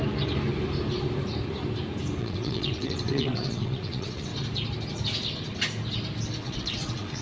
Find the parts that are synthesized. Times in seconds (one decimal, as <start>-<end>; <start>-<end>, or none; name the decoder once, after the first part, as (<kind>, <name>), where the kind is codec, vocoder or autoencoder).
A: 2.2-4.3 (vocoder, WaveNeXt); 6.4-7.2

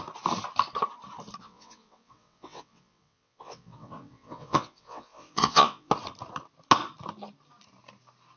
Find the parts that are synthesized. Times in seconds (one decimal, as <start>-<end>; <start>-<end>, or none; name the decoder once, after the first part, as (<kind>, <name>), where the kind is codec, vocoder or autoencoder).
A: 1.4-5.9 (vocoder, WaveNeXt)

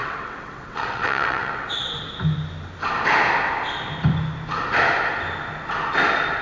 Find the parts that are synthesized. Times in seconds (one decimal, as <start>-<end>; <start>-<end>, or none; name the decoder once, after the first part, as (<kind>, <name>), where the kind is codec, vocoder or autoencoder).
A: 0.0-1.9 (vocoder, WaveNeXt)

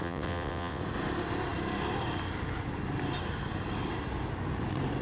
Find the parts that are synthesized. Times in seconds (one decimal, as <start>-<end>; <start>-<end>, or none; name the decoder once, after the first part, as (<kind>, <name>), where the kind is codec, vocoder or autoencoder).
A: 0.0-0.8 (vocoder, WaveNeXt)

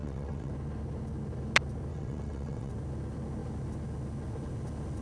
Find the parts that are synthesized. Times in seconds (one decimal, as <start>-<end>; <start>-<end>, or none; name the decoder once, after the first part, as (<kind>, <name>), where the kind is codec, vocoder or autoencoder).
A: 0.0-0.5 (vocoder, WaveNeXt); 1.9-2.7

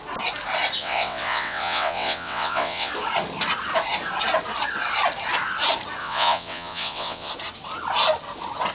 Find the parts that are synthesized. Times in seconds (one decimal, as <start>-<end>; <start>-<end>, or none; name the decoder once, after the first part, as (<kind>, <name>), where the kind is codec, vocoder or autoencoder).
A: 0.8-2.9 (vocoder, WaveNeXt); 6.0-7.3